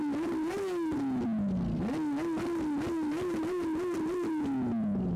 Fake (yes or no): no